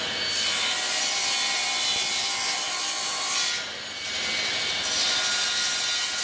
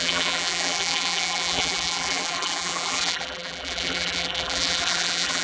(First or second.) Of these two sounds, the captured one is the first